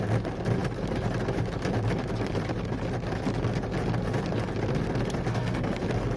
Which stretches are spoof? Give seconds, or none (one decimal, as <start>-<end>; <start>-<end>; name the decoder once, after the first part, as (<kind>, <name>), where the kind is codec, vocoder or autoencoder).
5.3-5.8 (codec, SNAC)